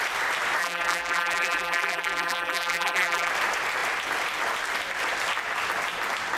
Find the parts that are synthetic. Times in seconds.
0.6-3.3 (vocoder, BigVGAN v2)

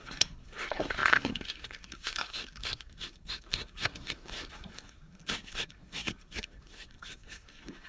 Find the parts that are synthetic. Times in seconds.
0.0-7.9 (codec, SNAC)

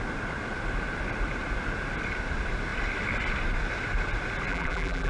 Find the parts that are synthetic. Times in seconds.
4.5-5.1 (vocoder, BigVGAN v2)

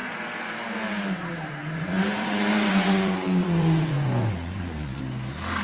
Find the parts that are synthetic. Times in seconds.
1.6-5.0 (vocoder, Vocos)

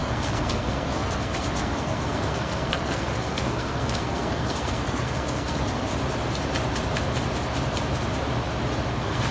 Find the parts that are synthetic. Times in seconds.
0.0-5.9 (codec, SNAC); 8.9-9.3

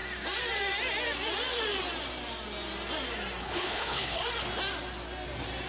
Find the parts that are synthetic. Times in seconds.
3.4-4.2 (codec, HILCodec)

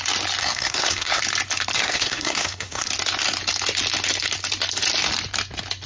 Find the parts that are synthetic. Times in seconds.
0.4-1.2 (codec, SNAC); 1.8-2.9